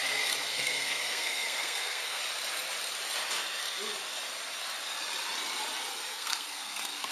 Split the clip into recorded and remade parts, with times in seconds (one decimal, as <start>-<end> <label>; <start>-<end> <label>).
0.0-0.5 recorded; 0.5-2.2 remade; 2.2-6.1 recorded; 6.1-7.1 remade